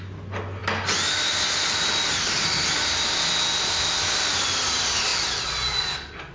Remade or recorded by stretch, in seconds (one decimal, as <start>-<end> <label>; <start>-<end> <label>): 0.0-6.3 recorded

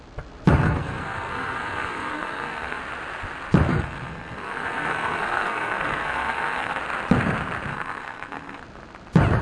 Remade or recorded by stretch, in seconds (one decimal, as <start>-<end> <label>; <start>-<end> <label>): 0.0-0.6 recorded; 0.6-2.8 remade; 2.8-3.7 recorded; 3.7-6.8 remade; 6.8-7.7 recorded; 7.7-8.6 remade; 8.6-9.4 recorded

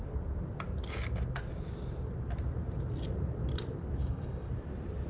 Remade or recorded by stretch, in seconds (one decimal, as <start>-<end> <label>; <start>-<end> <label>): 0.0-4.0 recorded; 4.0-4.5 remade; 4.5-5.1 recorded

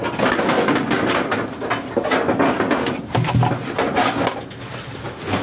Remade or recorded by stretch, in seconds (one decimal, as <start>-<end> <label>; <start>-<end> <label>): 0.0-5.4 recorded

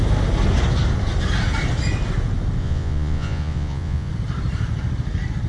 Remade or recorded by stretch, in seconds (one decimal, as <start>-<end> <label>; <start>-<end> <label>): 0.0-2.6 recorded; 2.6-4.1 remade; 4.1-5.5 recorded

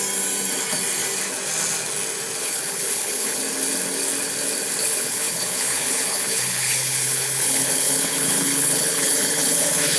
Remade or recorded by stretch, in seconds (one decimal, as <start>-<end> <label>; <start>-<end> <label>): 0.0-2.4 recorded; 2.4-3.4 remade; 3.4-4.8 recorded; 4.8-10.0 remade

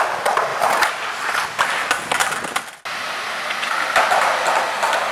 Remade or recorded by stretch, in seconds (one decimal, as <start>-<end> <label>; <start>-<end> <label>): 0.0-5.1 recorded

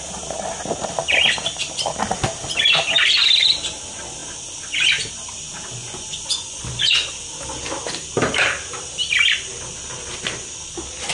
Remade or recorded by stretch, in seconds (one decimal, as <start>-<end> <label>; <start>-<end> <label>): 0.0-5.8 recorded; 5.8-6.8 remade; 6.8-11.1 recorded